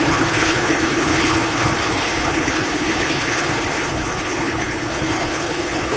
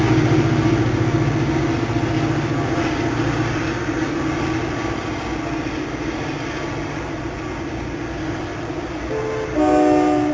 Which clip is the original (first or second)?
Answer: second